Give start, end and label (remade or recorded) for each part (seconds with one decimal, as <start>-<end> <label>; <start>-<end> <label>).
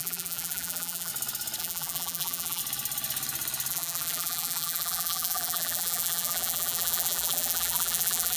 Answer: 0.0-1.1 remade; 1.1-1.6 recorded; 1.6-2.6 remade; 2.6-3.7 recorded; 3.7-8.4 remade